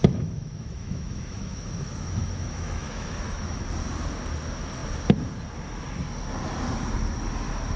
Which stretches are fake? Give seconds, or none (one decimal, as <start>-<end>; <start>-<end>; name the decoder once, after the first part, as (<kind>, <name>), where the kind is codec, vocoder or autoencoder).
0.0-3.6 (autoencoder, DAC-VAE)